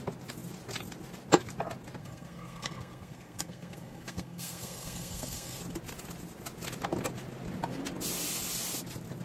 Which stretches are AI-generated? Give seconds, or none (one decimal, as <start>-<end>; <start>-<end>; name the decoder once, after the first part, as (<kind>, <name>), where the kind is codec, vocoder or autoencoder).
2.0-5.6 (codec, SNAC)